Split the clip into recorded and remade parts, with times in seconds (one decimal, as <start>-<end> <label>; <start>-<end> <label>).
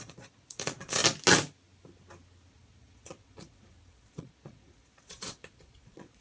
0.0-1.0 remade; 1.0-2.5 recorded; 2.5-6.2 remade